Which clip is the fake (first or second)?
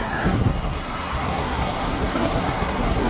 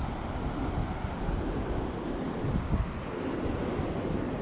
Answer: first